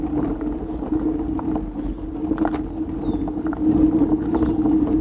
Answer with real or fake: real